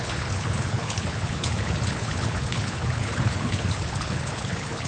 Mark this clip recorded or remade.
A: remade